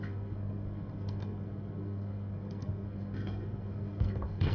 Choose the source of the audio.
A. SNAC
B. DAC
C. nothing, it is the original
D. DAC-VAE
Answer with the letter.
A